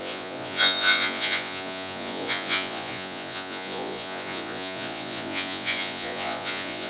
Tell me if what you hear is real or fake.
fake